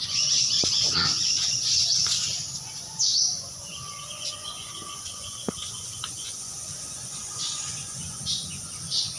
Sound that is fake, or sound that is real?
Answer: fake